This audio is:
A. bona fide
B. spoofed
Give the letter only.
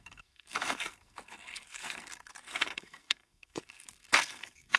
B